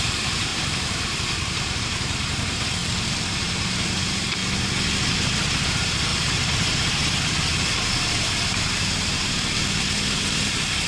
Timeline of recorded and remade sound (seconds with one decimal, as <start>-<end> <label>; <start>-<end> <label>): 0.0-2.8 remade; 2.8-3.3 recorded; 3.3-4.4 remade; 4.4-5.1 recorded; 5.1-10.9 remade